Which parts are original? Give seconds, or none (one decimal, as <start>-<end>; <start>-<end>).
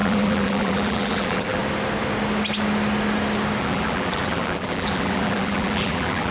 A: 1.6-3.6